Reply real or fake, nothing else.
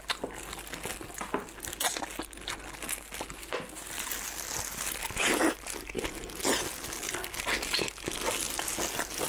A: real